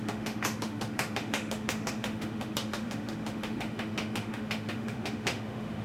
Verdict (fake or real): fake